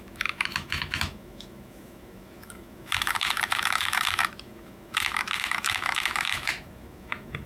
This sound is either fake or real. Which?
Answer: fake